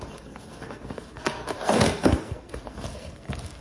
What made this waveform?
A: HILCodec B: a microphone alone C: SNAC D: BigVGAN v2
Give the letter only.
C